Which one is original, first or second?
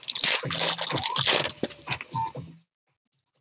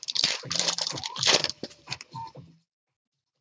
first